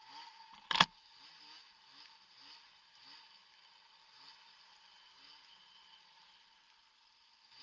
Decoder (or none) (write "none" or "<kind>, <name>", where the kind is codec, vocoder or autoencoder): none